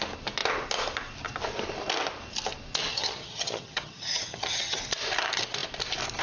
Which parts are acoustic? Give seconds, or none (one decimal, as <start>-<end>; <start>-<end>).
0.0-2.9; 4.8-6.2